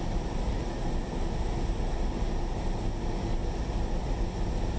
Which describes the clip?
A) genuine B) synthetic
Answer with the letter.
A